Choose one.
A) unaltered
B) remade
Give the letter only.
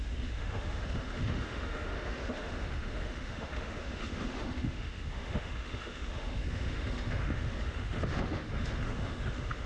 B